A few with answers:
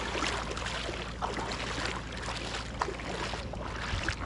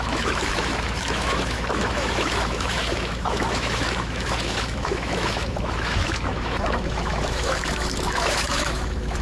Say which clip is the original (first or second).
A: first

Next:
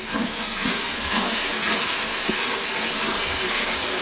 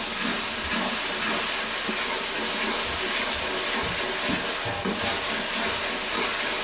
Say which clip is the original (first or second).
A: second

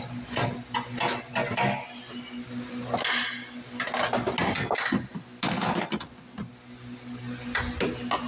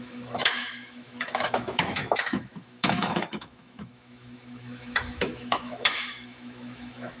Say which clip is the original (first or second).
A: first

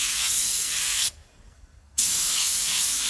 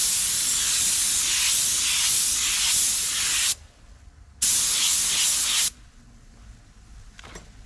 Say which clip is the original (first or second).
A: second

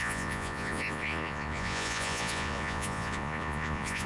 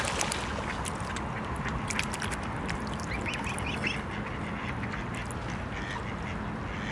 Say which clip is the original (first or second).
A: second